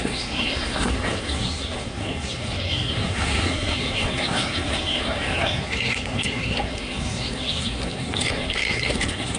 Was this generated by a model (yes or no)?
yes